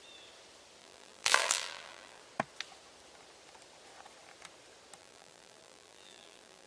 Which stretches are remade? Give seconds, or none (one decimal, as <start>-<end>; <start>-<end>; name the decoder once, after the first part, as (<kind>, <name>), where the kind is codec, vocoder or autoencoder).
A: 0.8-2.2 (vocoder, BigVGAN v2); 5.0-6.7